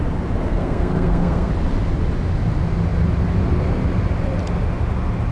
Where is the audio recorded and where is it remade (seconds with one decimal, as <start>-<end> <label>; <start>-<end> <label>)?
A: 0.0-0.4 recorded; 0.4-1.5 remade; 1.5-5.3 recorded